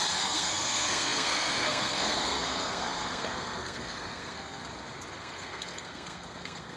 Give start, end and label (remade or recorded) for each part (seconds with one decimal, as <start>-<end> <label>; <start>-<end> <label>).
0.0-4.6 remade; 4.6-5.1 recorded; 5.1-6.8 remade